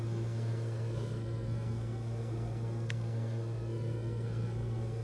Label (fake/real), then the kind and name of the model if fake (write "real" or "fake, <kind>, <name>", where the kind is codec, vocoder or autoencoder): fake, codec, SNAC